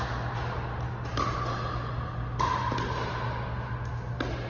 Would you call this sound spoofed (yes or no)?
no